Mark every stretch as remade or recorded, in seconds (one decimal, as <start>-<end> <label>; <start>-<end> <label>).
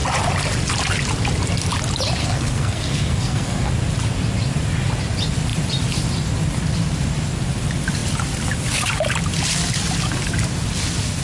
0.0-2.2 recorded; 2.2-3.7 remade; 3.7-11.2 recorded